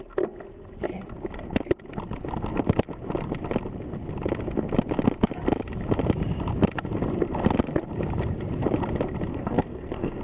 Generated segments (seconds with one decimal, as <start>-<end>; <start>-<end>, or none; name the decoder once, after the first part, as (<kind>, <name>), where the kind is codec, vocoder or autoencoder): 9.3-10.2 (codec, SNAC)